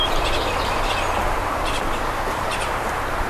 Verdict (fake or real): fake